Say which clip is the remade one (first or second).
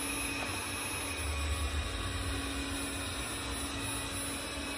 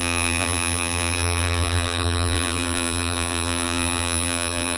second